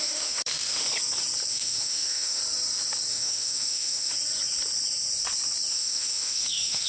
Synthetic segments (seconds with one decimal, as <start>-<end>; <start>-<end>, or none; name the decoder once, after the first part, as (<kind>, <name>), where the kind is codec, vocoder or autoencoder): 0.0-0.9 (autoencoder, DAC-VAE); 1.5-2.4; 3.1-4.1; 5.7-6.9